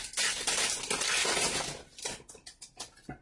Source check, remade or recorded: recorded